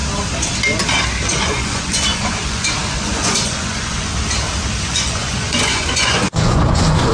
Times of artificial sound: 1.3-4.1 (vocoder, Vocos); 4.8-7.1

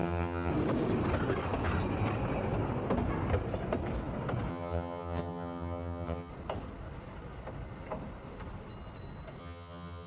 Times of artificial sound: 0.0-0.5 (vocoder, HiFi-GAN); 4.5-6.3; 9.4-10.1

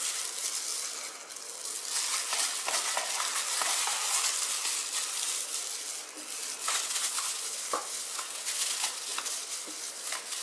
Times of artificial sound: none

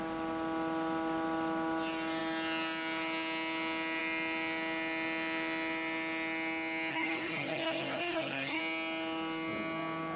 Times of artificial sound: 6.9-8.6 (codec, SNAC)

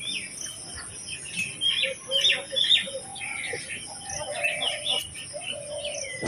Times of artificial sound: none

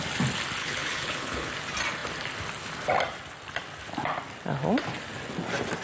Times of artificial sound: 0.6-1.5 (codec, HILCodec)

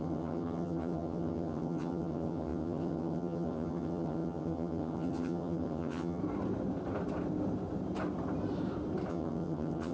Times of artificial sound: 0.0-6.2 (vocoder, HiFi-GAN); 9.1-9.9

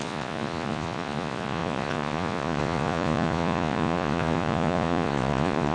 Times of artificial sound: 0.0-5.7 (vocoder, Vocos)